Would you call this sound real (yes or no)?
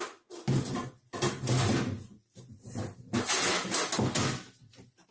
yes